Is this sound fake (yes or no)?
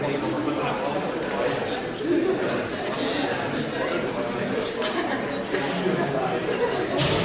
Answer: no